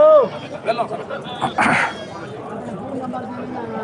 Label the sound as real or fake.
real